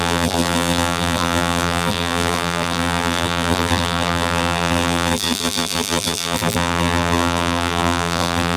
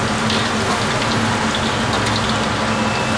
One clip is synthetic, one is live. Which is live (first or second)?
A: second